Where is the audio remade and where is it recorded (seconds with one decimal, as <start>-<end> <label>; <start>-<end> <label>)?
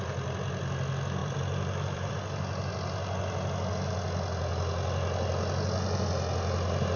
0.0-1.2 recorded; 1.2-2.1 remade; 2.1-7.0 recorded